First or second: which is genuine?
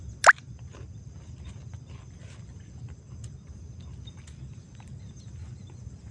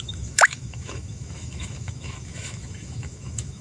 first